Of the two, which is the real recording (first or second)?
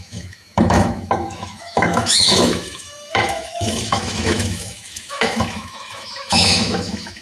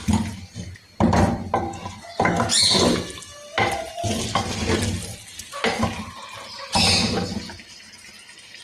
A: second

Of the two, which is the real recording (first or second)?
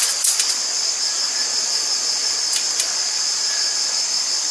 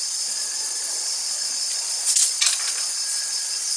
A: first